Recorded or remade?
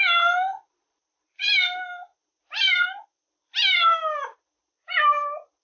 recorded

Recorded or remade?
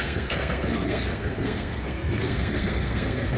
remade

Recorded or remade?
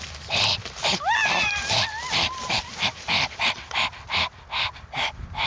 recorded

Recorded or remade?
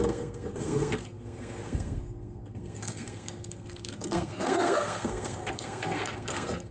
remade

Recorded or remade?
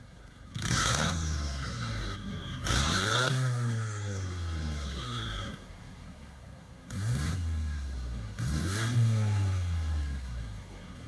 remade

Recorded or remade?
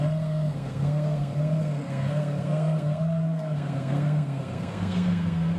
remade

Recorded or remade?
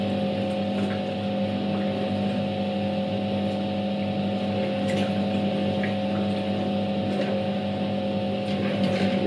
recorded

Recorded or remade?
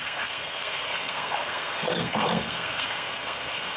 remade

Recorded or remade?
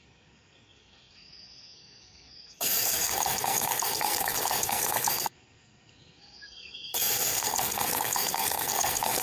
remade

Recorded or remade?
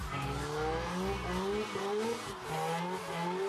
recorded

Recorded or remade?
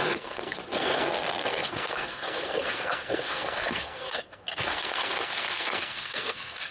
remade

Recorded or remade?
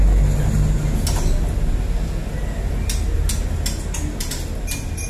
recorded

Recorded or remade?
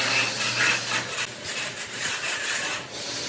recorded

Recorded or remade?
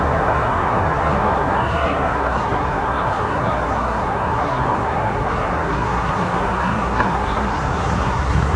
remade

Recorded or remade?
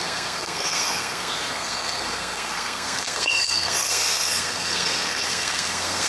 remade